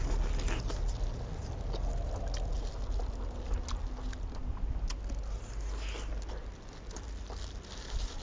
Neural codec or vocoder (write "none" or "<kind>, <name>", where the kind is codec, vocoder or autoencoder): none